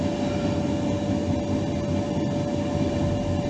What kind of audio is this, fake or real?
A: real